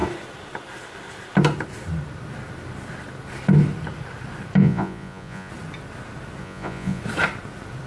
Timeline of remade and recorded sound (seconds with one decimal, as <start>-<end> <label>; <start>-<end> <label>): 0.0-4.6 recorded; 4.6-5.5 remade; 5.5-6.4 recorded; 6.4-7.0 remade; 7.0-7.9 recorded